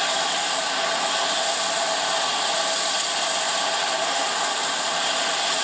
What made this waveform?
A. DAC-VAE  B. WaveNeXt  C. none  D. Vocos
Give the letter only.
C